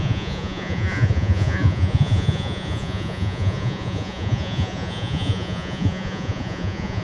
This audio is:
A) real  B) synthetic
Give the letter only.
B